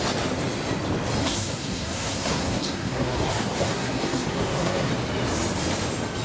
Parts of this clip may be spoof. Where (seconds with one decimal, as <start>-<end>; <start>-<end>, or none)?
1.2-4.9